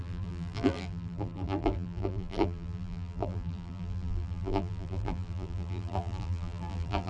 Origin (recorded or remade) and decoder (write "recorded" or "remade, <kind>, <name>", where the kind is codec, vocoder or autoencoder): remade, vocoder, BigVGAN v2